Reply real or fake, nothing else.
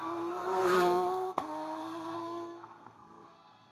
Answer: fake